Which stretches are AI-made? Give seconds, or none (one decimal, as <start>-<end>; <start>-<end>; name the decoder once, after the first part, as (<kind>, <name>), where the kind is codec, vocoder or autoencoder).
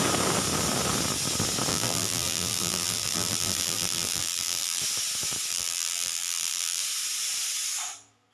1.7-4.8 (vocoder, BigVGAN v2); 5.5-6.8